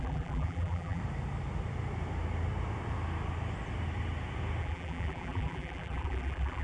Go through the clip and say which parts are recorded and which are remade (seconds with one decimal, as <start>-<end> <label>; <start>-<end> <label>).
0.0-1.0 remade; 1.0-4.6 recorded; 4.6-6.6 remade